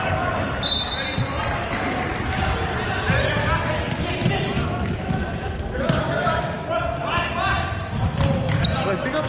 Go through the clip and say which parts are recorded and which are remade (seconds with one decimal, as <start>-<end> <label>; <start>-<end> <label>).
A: 0.0-4.6 recorded; 4.6-5.2 remade; 5.2-9.3 recorded